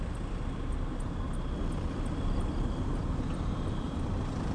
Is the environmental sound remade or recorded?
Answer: recorded